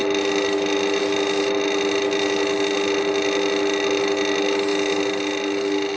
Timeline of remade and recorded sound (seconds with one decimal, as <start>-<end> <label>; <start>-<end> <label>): 0.0-6.0 recorded